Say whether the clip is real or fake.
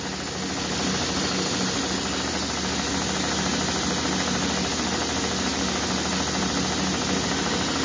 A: real